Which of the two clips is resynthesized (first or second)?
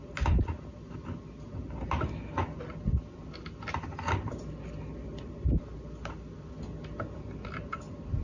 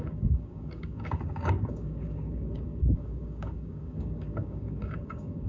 second